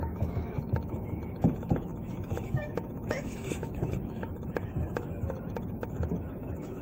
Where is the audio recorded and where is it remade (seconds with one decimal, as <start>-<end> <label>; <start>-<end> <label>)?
0.0-6.8 remade